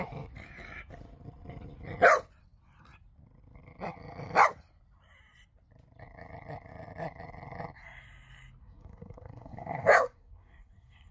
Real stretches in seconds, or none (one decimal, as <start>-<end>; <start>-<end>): 0.0-8.6